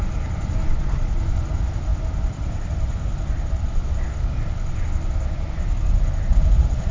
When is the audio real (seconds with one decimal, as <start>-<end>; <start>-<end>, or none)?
0.0-0.7; 1.2-6.3